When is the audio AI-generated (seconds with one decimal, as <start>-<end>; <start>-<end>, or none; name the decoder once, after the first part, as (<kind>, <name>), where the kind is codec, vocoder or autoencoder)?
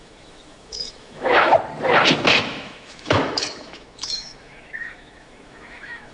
0.0-1.5 (autoencoder, DAC-VAE); 2.3-6.1